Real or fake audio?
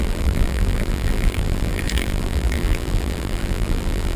fake